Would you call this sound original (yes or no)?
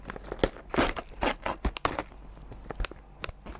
yes